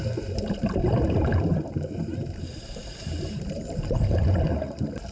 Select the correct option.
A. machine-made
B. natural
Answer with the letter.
A